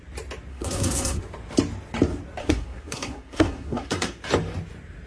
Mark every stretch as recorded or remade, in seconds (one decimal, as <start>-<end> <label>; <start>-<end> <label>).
0.0-0.5 recorded; 0.5-1.2 remade; 1.2-2.4 recorded; 2.4-4.2 remade; 4.2-5.1 recorded

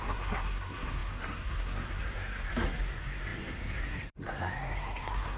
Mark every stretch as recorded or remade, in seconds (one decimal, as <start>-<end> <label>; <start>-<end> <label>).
0.0-5.4 remade